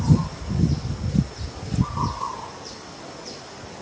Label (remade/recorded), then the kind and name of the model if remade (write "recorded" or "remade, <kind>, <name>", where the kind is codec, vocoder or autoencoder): recorded